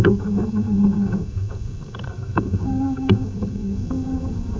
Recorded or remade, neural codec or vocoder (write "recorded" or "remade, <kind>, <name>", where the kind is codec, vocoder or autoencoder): remade, codec, SNAC